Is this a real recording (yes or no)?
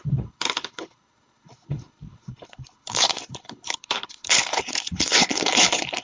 no